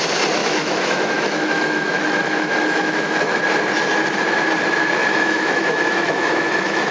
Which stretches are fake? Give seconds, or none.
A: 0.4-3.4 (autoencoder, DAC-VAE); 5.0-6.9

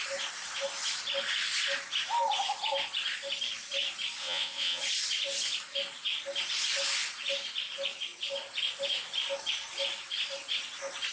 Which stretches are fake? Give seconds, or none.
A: 4.2-4.8 (vocoder, WaveNeXt)